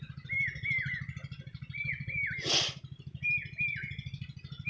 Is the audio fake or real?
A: real